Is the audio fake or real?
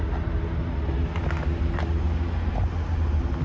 real